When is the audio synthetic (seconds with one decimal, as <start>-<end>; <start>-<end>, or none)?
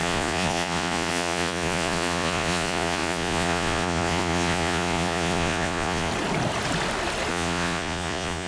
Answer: 0.0-6.1; 7.3-8.5